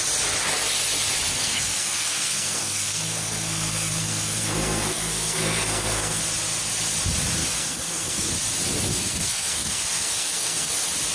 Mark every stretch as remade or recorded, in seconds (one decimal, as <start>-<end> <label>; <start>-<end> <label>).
0.0-1.4 recorded; 1.4-6.2 remade; 6.2-7.4 recorded; 7.4-8.3 remade; 8.3-8.9 recorded; 8.9-10.7 remade; 10.7-11.1 recorded